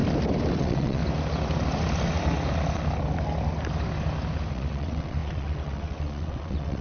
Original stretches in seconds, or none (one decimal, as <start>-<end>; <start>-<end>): 0.0-0.6; 1.0-4.5